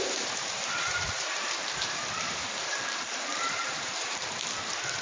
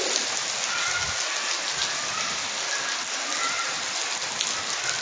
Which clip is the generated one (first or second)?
first